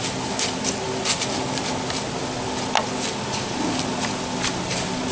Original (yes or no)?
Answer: yes